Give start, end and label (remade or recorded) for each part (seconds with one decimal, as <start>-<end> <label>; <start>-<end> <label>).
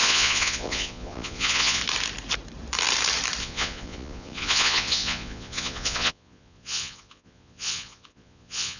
0.0-1.8 remade; 1.8-3.4 recorded; 3.4-8.8 remade